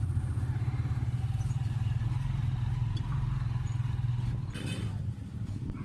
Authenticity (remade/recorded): remade